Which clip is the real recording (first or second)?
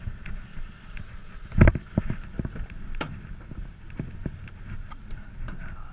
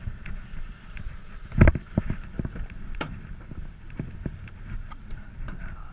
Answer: first